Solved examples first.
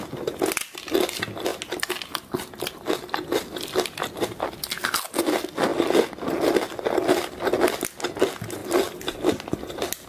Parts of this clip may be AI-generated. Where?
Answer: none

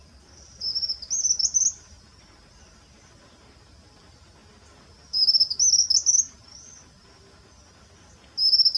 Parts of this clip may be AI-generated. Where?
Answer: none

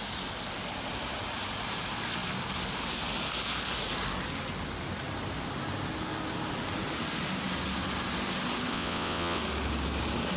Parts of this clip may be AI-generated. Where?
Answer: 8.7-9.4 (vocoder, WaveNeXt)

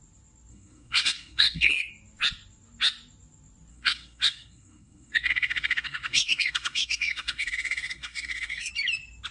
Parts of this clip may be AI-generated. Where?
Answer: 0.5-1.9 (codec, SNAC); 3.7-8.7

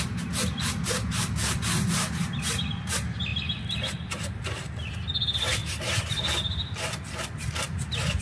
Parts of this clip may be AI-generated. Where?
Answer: none

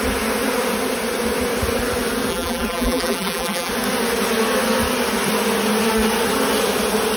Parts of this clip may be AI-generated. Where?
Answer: 2.3-3.7 (vocoder, BigVGAN v2)

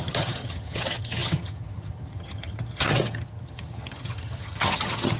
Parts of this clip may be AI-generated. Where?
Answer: 0.0-5.2 (vocoder, HiFi-GAN)